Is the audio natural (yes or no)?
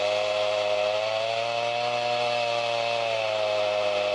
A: yes